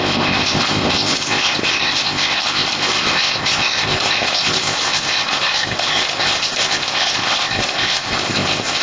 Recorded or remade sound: remade